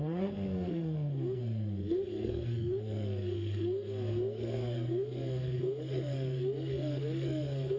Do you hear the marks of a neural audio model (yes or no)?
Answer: yes